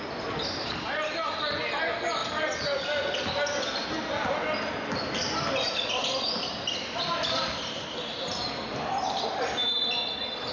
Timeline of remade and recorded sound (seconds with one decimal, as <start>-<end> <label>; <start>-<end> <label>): 0.0-10.5 recorded